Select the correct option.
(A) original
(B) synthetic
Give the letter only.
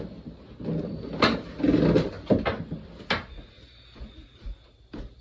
A